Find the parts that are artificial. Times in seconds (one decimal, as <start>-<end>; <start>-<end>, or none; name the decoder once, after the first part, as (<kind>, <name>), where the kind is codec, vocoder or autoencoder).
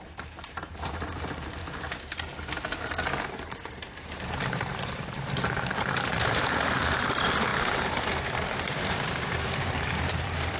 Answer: 0.0-1.6 (vocoder, BigVGAN v2); 3.2-10.6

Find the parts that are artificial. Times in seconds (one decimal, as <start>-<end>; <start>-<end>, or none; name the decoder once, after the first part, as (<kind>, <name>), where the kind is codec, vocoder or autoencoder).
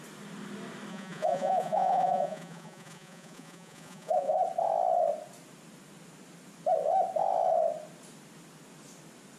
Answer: 0.9-4.4 (vocoder, Vocos)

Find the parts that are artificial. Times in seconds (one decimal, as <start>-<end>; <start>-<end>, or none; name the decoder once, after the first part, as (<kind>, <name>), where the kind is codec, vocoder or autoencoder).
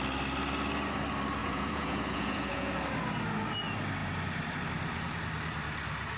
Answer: 1.4-2.7 (vocoder, Vocos)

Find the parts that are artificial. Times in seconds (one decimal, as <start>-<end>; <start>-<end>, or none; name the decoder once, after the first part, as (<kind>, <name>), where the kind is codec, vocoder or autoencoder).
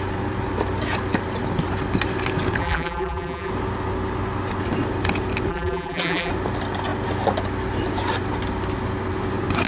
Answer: 2.6-3.5 (vocoder, BigVGAN v2); 5.5-6.3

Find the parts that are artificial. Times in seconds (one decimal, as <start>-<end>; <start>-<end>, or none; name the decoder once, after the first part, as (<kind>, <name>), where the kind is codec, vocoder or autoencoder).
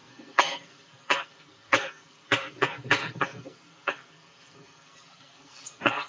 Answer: 0.0-6.1 (codec, SNAC)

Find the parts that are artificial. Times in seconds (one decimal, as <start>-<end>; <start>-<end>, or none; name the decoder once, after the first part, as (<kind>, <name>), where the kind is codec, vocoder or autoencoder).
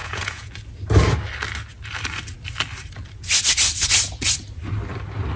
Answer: 0.0-0.5 (vocoder, Vocos)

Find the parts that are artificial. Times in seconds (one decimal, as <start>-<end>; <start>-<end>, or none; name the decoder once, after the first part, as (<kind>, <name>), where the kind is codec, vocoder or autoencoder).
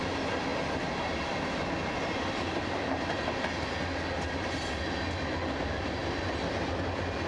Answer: none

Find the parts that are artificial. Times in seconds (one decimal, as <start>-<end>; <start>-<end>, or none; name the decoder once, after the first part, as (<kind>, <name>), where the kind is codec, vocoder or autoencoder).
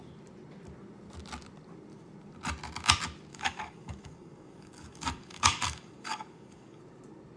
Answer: 3.3-6.8 (codec, DAC)